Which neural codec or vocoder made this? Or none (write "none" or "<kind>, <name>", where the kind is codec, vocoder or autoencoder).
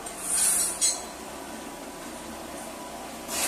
none